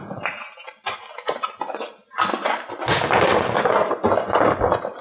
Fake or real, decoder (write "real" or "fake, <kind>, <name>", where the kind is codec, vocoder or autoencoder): real